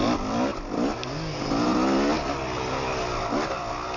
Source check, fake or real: real